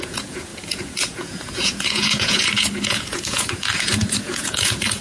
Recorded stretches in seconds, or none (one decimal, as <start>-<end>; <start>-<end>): none